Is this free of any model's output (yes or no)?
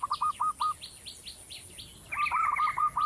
yes